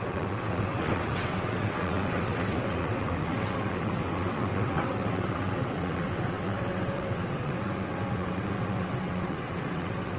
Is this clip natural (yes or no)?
no